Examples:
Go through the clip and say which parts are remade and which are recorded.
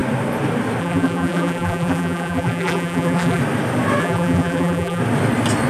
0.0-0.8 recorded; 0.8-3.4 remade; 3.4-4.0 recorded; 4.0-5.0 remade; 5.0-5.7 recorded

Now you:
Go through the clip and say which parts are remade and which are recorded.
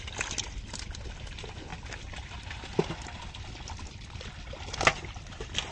0.0-5.7 recorded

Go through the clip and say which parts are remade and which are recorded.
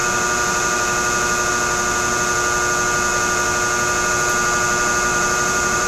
0.0-5.1 recorded; 5.1-5.9 remade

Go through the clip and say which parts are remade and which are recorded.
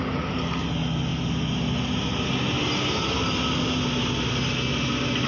0.0-5.3 recorded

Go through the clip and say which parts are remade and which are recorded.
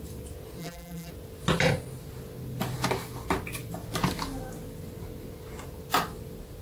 0.0-0.6 recorded; 0.6-1.1 remade; 1.1-6.6 recorded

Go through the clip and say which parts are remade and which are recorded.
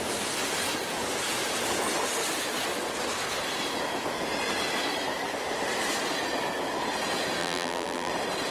0.0-7.4 recorded; 7.4-8.1 remade; 8.1-8.5 recorded